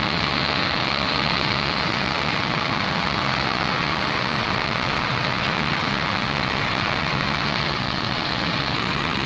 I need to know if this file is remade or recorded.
remade